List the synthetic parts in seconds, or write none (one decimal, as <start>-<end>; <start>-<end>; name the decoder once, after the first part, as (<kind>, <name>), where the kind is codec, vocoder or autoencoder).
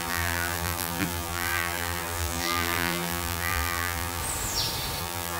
0.0-4.2 (vocoder, BigVGAN v2); 5.0-5.4